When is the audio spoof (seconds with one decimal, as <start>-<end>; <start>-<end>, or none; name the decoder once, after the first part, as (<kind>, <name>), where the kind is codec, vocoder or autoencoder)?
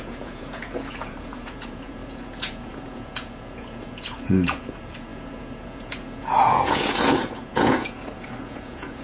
0.0-9.0 (vocoder, Vocos)